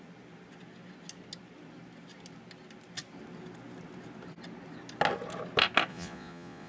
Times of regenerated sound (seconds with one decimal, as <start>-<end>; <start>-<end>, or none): 5.9-6.7